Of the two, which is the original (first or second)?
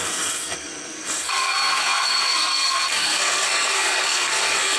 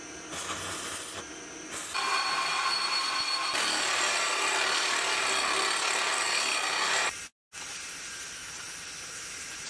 second